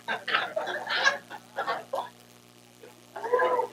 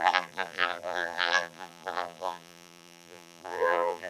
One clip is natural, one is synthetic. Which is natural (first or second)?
first